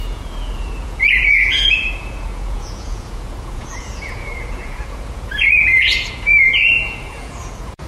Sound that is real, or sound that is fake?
fake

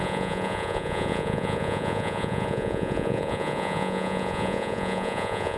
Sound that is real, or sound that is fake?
fake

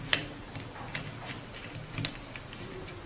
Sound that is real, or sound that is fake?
real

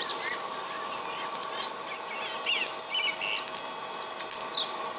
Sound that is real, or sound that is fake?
real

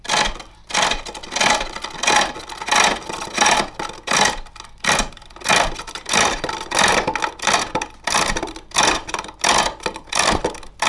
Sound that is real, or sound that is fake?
real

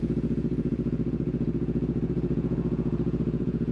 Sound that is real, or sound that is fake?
fake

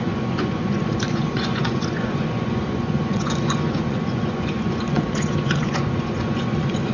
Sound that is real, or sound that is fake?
fake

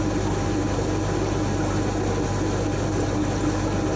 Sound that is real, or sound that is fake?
real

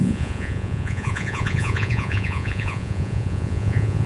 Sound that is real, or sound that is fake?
fake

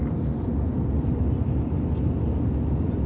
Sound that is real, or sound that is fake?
real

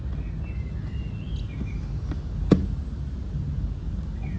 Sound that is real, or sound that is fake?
real